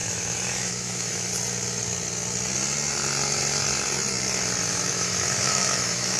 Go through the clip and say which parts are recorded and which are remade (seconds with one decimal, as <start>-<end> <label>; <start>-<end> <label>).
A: 0.0-1.3 remade; 1.3-4.7 recorded; 4.7-6.2 remade